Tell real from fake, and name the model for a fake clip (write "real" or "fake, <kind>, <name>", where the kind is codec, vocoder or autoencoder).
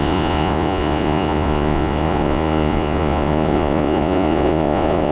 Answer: fake, vocoder, Vocos